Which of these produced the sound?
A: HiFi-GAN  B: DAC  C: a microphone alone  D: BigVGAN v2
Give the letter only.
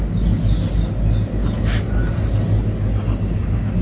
C